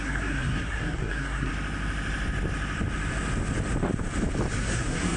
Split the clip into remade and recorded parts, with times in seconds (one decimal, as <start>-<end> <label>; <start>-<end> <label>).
0.0-1.5 remade; 1.5-4.6 recorded; 4.6-5.2 remade